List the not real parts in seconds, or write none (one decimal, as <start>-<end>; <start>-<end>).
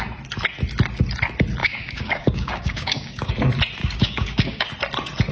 1.6-3.3; 3.8-4.7